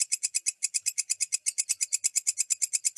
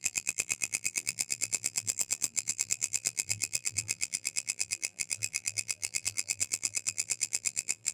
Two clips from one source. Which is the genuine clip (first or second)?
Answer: first